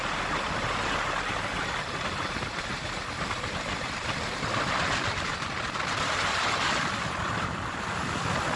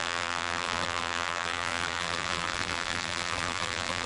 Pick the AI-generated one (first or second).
second